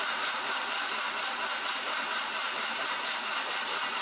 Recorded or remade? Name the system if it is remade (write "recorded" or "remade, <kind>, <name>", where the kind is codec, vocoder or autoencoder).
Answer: remade, vocoder, BigVGAN v2